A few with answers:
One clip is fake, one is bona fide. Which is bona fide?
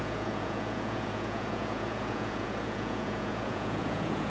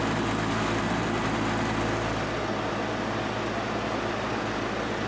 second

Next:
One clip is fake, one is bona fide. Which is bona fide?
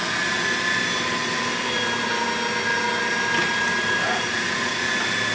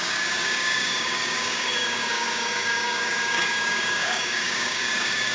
first